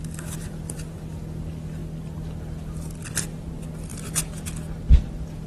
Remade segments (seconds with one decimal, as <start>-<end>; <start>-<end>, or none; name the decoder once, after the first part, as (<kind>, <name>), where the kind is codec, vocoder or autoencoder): none

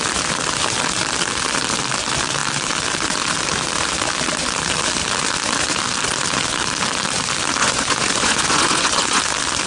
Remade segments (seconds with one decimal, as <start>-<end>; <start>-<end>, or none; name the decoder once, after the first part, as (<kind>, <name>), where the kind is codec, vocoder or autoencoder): 7.6-9.2 (vocoder, Vocos)

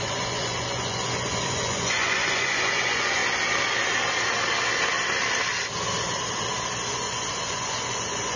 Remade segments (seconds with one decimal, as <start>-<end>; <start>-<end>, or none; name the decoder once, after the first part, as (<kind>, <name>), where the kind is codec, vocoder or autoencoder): 0.0-3.2 (vocoder, Vocos); 6.9-8.4

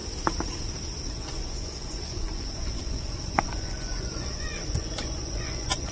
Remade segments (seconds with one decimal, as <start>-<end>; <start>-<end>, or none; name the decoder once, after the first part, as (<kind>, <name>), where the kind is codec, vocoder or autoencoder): 1.1-5.9 (vocoder, Vocos)

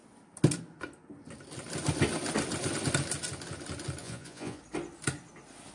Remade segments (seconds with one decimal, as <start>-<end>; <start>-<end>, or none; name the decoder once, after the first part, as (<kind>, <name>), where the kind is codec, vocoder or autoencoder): 4.0-4.6 (vocoder, Vocos)

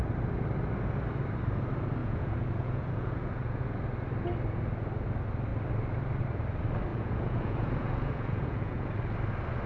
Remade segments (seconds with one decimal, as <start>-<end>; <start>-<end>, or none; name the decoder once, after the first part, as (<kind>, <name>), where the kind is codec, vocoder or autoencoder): 2.0-3.6 (vocoder, Vocos); 6.9-9.0

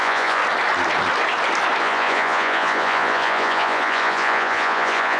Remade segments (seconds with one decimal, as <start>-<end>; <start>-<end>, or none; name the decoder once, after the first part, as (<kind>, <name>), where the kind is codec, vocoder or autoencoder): 0.0-0.4 (vocoder, Vocos); 1.8-5.2

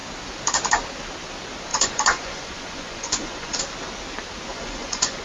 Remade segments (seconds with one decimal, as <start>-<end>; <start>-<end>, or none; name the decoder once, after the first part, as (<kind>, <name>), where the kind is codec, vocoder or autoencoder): 1.7-3.6 (vocoder, Vocos); 4.5-5.2